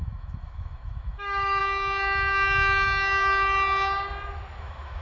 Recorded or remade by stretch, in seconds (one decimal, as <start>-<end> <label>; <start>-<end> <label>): 0.0-1.6 remade; 1.6-4.6 recorded; 4.6-5.0 remade